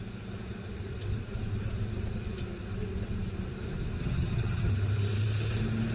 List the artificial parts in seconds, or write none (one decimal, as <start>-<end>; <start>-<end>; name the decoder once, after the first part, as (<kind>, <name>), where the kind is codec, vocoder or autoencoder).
4.0-4.7 (vocoder, HiFi-GAN)